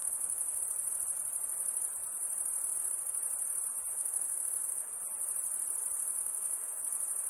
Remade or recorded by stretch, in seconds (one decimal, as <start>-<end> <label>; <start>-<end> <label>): 0.0-0.6 remade; 0.6-3.9 recorded; 3.9-4.9 remade; 4.9-6.2 recorded; 6.2-6.8 remade; 6.8-7.3 recorded